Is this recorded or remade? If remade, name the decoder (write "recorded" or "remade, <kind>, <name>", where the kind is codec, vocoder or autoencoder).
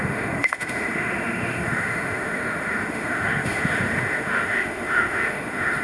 remade, autoencoder, DAC-VAE